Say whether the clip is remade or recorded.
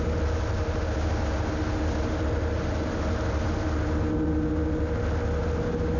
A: recorded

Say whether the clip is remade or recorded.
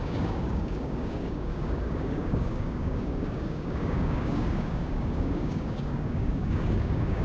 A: remade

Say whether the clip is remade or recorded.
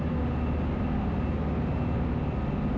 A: recorded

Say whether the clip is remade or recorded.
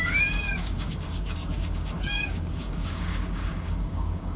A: remade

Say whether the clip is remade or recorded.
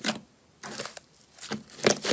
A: recorded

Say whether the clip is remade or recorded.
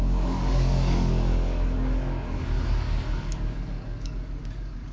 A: remade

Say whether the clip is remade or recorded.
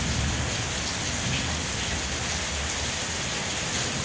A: recorded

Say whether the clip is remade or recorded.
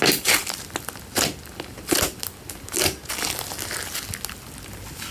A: recorded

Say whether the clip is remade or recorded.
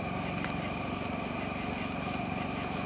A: recorded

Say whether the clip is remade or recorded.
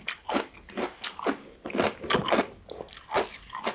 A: recorded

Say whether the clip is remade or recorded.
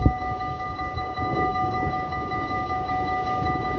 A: remade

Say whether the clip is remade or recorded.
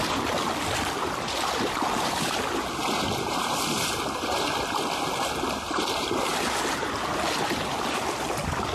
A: recorded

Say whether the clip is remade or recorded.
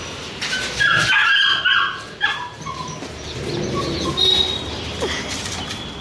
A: recorded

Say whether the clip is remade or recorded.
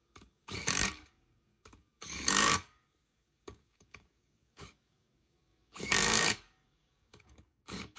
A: remade